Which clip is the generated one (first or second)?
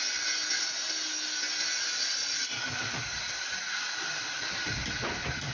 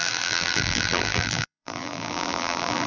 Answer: second